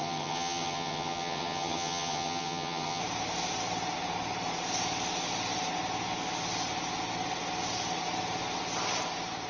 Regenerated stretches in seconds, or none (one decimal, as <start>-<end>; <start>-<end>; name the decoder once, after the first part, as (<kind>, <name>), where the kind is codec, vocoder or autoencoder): 0.0-3.0 (vocoder, HiFi-GAN)